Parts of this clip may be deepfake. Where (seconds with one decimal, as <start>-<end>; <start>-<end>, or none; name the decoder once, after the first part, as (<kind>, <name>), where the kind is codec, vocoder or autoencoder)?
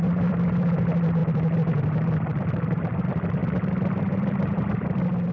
0.0-3.4 (vocoder, BigVGAN v2); 4.0-5.3